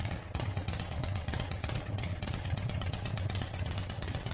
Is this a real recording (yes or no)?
no